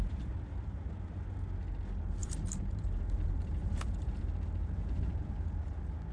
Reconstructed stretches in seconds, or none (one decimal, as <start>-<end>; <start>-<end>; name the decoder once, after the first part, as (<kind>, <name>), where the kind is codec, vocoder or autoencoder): 2.2-4.2 (vocoder, BigVGAN v2)

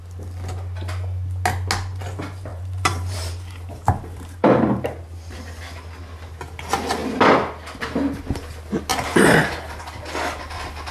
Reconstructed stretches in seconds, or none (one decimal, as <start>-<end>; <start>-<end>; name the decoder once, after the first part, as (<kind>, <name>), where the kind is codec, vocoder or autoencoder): 2.5-4.8 (vocoder, BigVGAN v2); 8.9-9.7

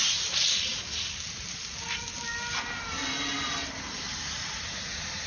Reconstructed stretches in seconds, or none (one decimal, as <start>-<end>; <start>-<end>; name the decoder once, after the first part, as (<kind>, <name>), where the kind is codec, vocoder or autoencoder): 0.0-0.7 (vocoder, BigVGAN v2); 3.9-5.3